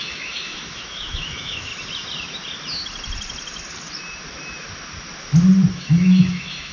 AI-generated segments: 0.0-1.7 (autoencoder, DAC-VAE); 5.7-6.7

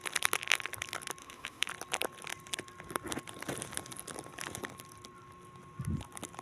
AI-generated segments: 1.2-1.7 (autoencoder, DAC-VAE)

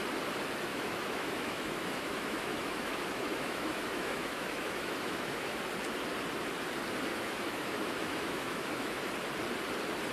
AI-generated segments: 0.7-5.6 (autoencoder, DAC-VAE); 7.1-9.1

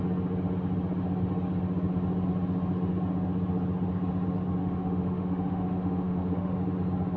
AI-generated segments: 4.6-6.5 (autoencoder, DAC-VAE)